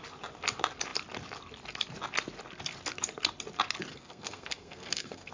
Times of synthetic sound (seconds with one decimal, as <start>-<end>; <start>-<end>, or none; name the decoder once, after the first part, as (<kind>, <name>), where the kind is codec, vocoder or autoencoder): 3.9-5.3 (codec, SNAC)